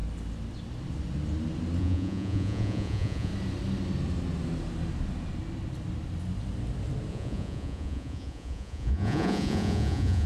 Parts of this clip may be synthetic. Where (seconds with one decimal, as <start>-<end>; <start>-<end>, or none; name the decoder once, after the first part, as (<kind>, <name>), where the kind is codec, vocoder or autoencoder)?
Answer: 1.8-3.3 (vocoder, Vocos); 7.1-10.3